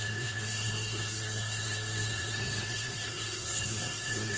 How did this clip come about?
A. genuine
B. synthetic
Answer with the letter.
B